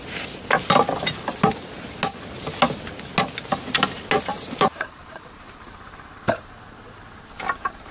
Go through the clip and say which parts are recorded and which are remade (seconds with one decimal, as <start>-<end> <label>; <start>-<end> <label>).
0.0-4.3 recorded; 4.3-6.4 remade; 6.4-7.9 recorded

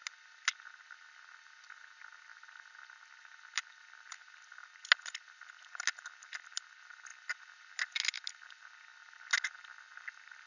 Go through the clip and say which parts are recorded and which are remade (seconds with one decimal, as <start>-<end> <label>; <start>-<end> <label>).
0.0-10.5 recorded

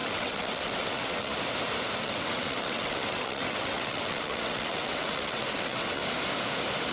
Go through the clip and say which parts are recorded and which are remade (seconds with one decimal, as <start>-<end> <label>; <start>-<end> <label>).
0.0-1.3 remade; 1.3-2.0 recorded; 2.0-6.0 remade; 6.0-6.9 recorded

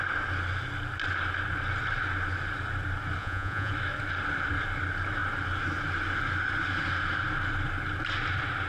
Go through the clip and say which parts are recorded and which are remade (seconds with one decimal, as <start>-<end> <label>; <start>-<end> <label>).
0.0-3.2 recorded; 3.2-3.7 remade; 3.7-8.7 recorded